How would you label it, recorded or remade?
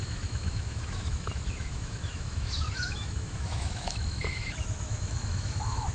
remade